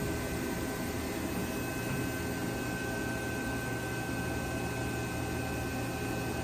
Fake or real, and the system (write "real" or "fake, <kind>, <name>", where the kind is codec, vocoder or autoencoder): real